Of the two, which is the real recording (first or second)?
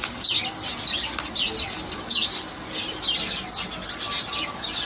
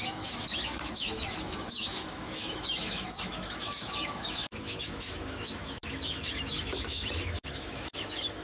first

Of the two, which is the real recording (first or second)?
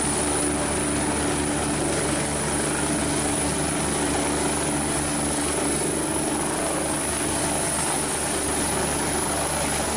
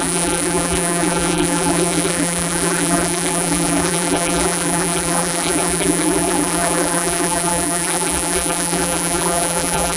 first